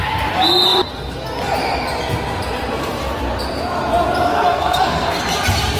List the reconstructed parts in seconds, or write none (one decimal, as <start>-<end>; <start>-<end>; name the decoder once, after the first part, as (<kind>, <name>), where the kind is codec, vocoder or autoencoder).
4.3-5.2 (codec, SNAC)